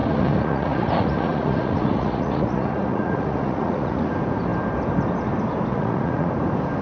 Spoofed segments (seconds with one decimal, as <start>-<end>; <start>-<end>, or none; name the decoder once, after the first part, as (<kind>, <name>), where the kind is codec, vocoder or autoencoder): 0.0-4.1 (vocoder, Vocos); 5.7-6.3

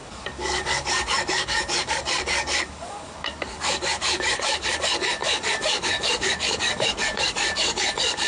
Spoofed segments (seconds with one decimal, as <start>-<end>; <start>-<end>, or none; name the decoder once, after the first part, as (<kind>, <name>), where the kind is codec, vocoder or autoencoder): 0.0-8.3 (codec, DAC)

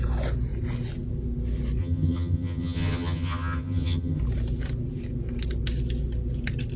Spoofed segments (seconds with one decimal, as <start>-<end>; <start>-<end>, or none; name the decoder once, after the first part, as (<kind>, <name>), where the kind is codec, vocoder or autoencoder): 1.8-4.2 (vocoder, HiFi-GAN)

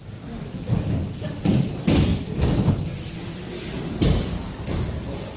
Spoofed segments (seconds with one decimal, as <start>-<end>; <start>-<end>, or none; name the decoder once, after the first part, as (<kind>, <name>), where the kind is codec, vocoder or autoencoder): none

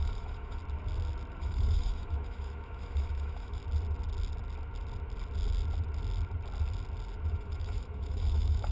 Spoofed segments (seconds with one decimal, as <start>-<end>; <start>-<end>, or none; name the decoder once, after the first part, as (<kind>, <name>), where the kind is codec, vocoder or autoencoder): 0.0-0.6 (autoencoder, DAC-VAE); 1.4-3.6; 7.3-8.7

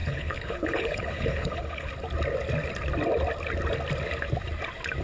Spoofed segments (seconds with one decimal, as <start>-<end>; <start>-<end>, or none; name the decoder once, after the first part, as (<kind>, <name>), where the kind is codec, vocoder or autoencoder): 0.0-1.9 (codec, HILCodec)

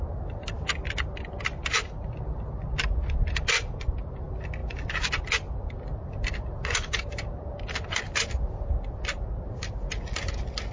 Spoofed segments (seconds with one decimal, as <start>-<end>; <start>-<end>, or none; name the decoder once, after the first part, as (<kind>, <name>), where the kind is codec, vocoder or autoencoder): none

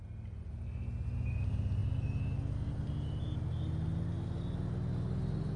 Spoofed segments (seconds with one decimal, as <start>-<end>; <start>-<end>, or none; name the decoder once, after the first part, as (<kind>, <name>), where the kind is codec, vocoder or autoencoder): none